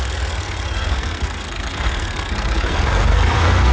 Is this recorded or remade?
remade